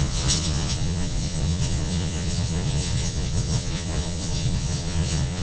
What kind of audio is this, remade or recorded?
remade